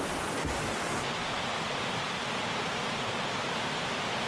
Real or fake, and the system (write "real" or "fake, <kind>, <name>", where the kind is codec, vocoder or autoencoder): fake, vocoder, BigVGAN v2